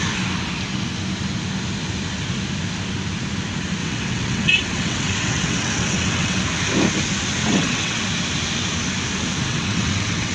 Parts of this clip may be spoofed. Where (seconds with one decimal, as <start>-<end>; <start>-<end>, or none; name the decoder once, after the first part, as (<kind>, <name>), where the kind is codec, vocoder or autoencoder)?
3.8-6.4 (vocoder, WaveNeXt); 7.4-8.0; 9.5-10.3